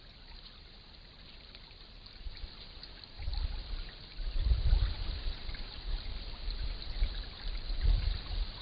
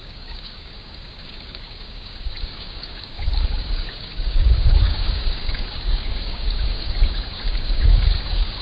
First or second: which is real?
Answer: first